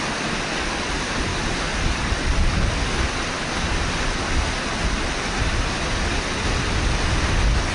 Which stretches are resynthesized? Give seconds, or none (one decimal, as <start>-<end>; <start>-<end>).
none